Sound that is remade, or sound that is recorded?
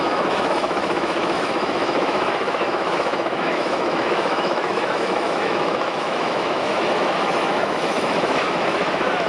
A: remade